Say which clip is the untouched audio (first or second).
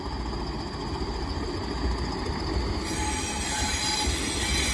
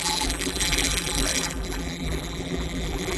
first